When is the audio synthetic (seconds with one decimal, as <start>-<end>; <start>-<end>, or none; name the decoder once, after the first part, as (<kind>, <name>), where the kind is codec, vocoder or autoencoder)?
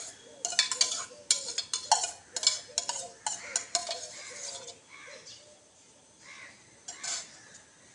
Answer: none